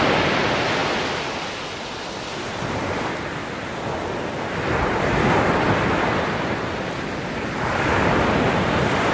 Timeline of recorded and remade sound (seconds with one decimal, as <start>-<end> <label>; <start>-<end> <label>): 0.0-9.1 recorded